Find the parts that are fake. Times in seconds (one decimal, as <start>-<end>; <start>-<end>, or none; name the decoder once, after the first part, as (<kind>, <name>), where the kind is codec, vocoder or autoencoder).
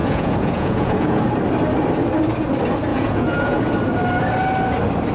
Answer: 0.0-1.2 (vocoder, Vocos); 2.9-3.6